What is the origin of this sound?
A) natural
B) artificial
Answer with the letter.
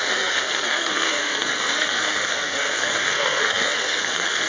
B